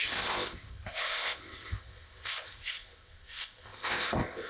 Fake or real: fake